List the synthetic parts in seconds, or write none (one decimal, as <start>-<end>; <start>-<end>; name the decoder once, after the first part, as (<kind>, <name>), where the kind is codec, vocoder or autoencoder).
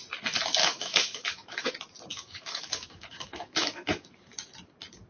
0.6-1.7 (autoencoder, DAC-VAE); 2.1-4.1